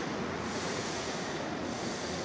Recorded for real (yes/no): no